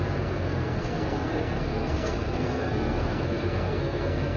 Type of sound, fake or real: fake